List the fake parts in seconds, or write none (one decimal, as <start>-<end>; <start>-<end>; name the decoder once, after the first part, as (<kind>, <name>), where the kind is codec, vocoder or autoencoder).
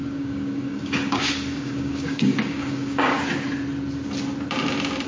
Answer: 0.0-3.1 (codec, DAC)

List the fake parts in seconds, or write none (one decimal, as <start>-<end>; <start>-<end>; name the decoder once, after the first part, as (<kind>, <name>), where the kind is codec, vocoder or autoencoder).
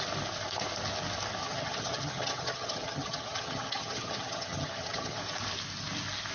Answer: 1.4-5.2 (vocoder, HiFi-GAN)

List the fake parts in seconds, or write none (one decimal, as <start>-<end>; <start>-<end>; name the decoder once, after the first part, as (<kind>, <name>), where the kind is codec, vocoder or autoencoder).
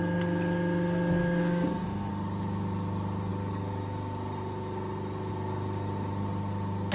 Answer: 1.4-2.1 (codec, DAC)